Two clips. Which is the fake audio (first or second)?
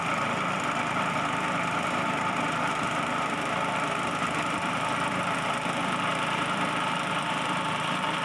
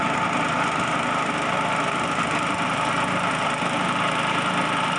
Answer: first